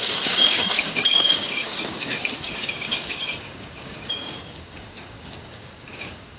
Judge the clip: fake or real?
fake